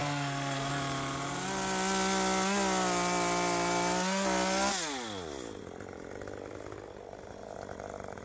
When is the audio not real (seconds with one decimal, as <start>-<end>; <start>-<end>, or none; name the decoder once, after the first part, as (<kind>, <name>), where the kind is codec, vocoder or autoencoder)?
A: 0.0-0.7 (codec, SNAC)